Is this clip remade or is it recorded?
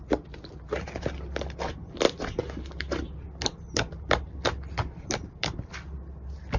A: recorded